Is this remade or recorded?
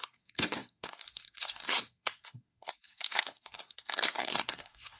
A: remade